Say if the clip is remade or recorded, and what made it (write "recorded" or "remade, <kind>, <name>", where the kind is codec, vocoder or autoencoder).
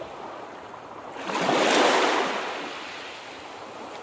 recorded